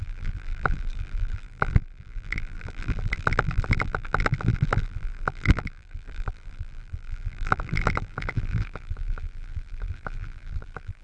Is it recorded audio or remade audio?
remade